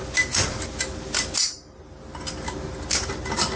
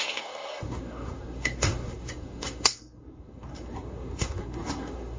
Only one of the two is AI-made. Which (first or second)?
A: second